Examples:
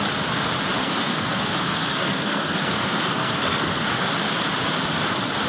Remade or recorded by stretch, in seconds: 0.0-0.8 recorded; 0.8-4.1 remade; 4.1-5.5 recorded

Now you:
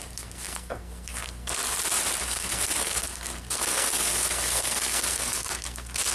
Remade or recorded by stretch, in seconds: 0.0-1.6 remade; 1.6-2.2 recorded; 2.2-6.1 remade

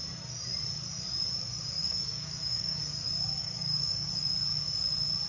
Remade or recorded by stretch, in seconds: 0.0-1.8 recorded; 1.8-2.8 remade; 2.8-3.4 recorded; 3.4-4.1 remade; 4.1-5.3 recorded

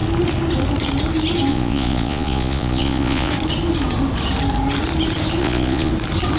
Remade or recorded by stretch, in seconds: 0.0-1.5 recorded; 1.5-3.3 remade; 3.3-5.4 recorded; 5.4-5.9 remade; 5.9-6.4 recorded